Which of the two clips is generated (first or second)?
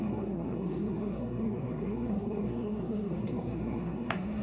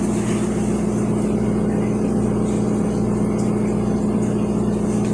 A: first